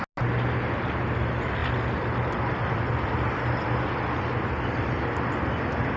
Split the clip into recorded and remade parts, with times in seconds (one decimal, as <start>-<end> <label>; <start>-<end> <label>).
0.0-6.0 recorded